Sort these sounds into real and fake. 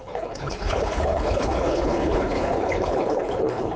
fake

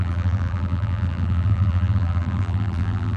fake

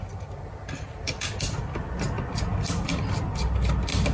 real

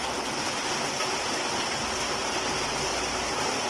real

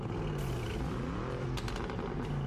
real